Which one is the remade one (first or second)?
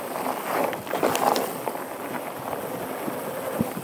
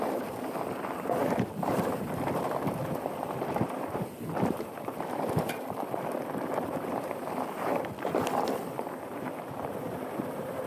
second